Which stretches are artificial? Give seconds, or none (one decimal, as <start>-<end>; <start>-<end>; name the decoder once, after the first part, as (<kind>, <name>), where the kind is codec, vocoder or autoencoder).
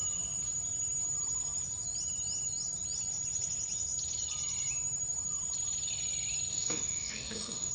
6.5-7.7 (autoencoder, DAC-VAE)